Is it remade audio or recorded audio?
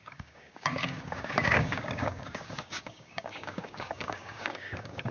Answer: remade